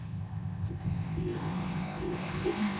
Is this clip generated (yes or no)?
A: yes